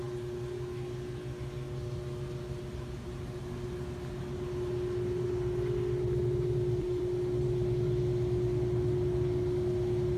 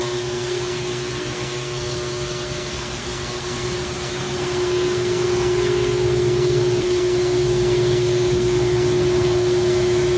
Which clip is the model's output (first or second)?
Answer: second